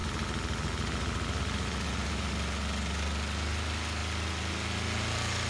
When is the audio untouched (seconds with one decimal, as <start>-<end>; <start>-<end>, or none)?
0.0-5.5